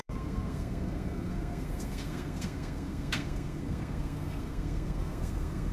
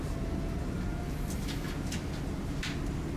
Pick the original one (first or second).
second